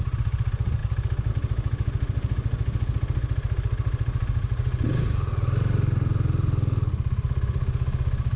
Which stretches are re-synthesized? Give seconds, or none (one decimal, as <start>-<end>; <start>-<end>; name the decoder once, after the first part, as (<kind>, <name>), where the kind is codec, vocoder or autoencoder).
none